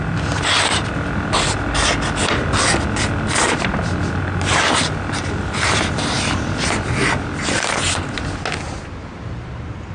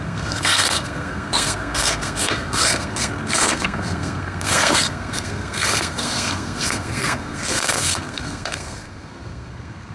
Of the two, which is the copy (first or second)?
second